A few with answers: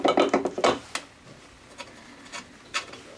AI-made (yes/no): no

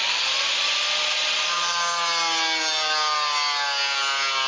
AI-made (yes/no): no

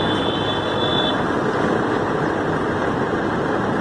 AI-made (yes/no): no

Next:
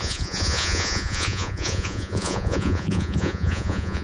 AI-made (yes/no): yes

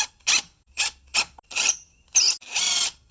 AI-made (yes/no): no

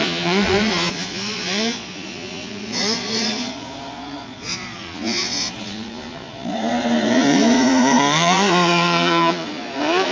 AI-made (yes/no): yes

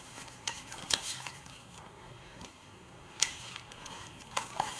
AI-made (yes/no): yes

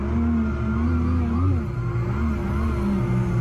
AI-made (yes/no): no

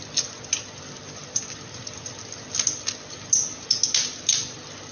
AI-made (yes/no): no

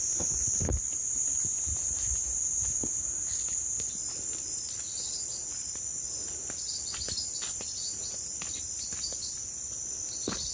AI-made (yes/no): no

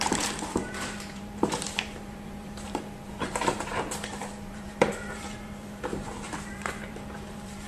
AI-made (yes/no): yes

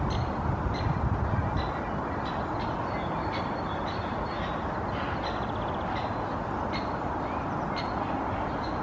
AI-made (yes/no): no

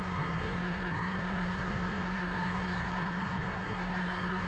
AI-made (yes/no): yes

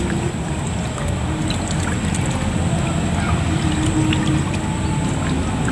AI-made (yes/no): no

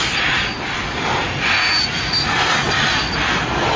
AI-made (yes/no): no